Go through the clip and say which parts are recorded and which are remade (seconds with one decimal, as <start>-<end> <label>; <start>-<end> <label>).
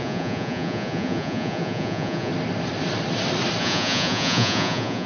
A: 0.0-2.3 remade; 2.3-3.6 recorded; 3.6-5.1 remade